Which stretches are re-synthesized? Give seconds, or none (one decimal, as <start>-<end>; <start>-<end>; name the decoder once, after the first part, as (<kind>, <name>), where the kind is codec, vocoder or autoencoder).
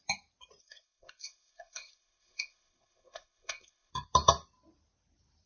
0.6-3.9 (codec, ZipCodec)